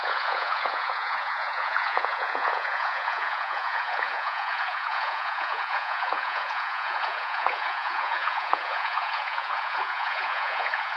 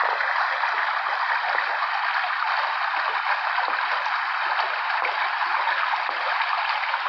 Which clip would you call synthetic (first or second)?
first